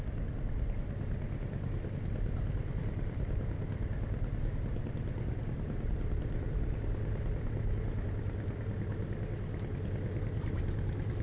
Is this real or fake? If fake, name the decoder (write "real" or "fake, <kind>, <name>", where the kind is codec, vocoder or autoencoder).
real